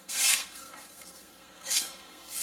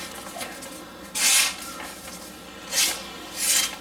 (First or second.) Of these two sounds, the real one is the second